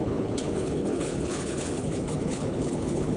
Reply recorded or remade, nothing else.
remade